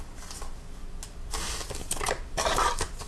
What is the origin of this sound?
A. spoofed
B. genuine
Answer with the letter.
B